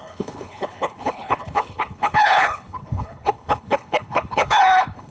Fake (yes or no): yes